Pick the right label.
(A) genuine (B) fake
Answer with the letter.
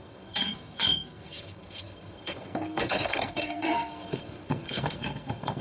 B